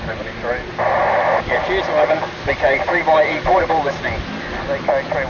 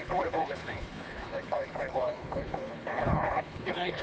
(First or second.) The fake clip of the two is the second